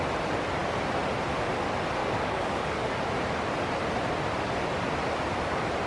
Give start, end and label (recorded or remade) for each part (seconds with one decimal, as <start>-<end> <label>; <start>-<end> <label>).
0.0-2.0 recorded; 2.0-3.0 remade; 3.0-5.9 recorded